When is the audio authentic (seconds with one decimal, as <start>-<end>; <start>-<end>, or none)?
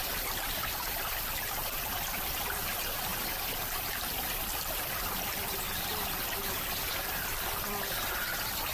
0.9-3.1; 6.5-8.7